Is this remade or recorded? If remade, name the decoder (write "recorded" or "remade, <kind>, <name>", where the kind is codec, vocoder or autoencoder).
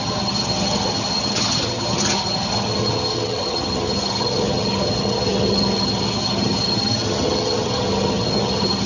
remade, vocoder, HiFi-GAN